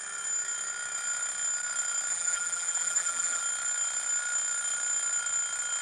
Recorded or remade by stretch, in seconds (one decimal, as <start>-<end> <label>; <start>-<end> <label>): 0.0-2.1 recorded; 2.1-3.4 remade; 3.4-5.8 recorded